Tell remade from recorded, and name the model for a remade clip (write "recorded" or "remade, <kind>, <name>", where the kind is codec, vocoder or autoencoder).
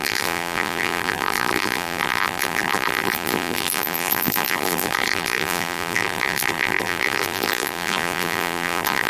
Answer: remade, vocoder, BigVGAN v2